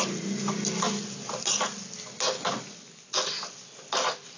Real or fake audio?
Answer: real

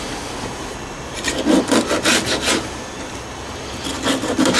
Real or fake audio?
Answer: real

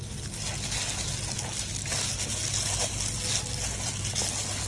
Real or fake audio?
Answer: real